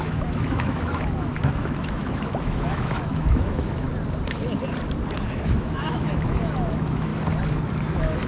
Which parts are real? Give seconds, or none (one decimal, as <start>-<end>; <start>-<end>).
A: 3.9-5.3; 7.1-7.9